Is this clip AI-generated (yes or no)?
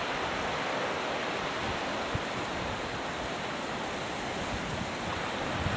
no